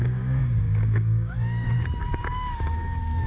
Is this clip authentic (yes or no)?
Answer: no